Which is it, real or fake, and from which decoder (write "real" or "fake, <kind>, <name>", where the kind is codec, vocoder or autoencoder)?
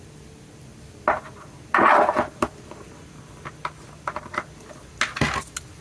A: real